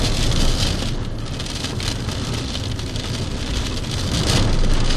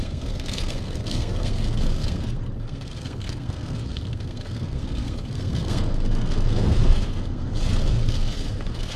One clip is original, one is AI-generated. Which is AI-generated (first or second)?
second